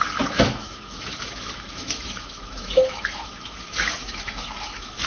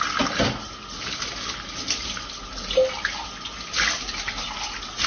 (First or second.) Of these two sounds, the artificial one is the first